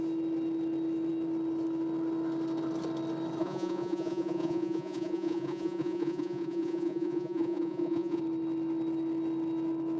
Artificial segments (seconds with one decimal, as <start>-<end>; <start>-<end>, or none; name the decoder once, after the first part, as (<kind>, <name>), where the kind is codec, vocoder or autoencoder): 3.4-8.2 (vocoder, Vocos)